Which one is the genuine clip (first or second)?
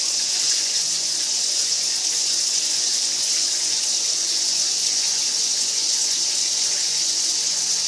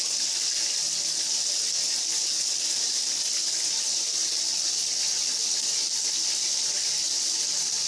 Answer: second